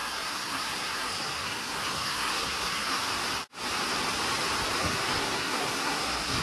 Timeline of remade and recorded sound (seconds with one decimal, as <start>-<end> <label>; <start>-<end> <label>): 0.0-3.1 remade; 3.1-4.8 recorded; 4.8-6.4 remade